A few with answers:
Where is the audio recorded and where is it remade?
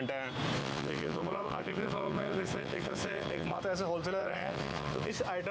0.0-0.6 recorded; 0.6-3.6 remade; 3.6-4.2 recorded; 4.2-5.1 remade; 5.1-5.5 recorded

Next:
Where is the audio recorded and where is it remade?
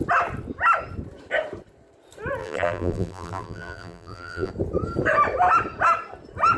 0.0-2.4 recorded; 2.4-4.5 remade; 4.5-6.6 recorded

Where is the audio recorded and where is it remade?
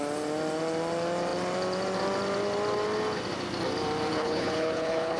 0.0-4.1 recorded; 4.1-5.2 remade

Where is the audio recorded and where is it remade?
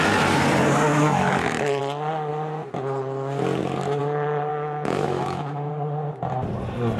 0.0-0.9 recorded; 0.9-1.8 remade; 1.8-4.5 recorded; 4.5-5.7 remade; 5.7-7.0 recorded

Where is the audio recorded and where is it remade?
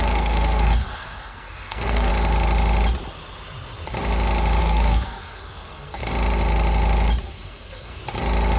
0.0-2.1 remade; 2.1-4.6 recorded; 4.6-6.0 remade; 6.0-7.2 recorded; 7.2-8.0 remade; 8.0-8.6 recorded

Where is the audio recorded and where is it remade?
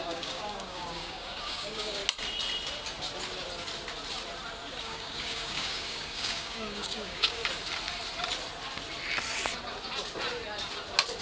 0.0-2.0 remade; 2.0-4.8 recorded; 4.8-7.4 remade; 7.4-11.2 recorded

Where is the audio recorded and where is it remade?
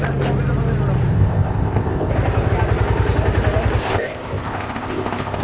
0.0-1.1 recorded; 1.1-2.1 remade; 2.1-3.8 recorded; 3.8-5.4 remade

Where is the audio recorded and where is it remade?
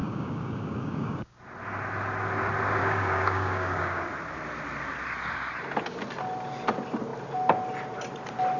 0.0-1.4 remade; 1.4-2.8 recorded; 2.8-4.1 remade; 4.1-8.6 recorded